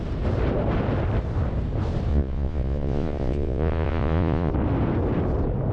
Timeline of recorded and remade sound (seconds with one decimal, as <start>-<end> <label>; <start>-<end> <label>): 0.0-2.1 recorded; 2.1-4.5 remade; 4.5-5.7 recorded